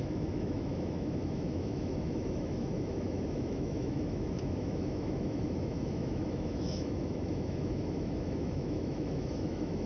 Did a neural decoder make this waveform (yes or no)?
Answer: yes